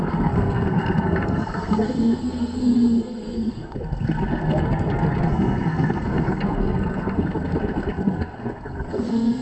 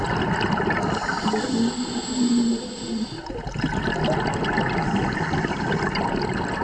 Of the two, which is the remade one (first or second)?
first